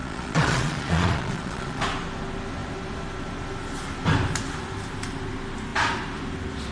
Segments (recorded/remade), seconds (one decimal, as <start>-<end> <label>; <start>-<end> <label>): 0.0-1.8 remade; 1.8-6.7 recorded